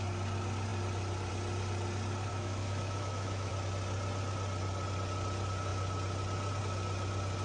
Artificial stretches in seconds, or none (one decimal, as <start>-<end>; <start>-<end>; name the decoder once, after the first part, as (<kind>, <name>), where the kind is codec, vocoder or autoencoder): 2.3-3.5 (autoencoder, DAC-VAE)